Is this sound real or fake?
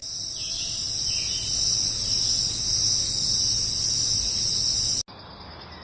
real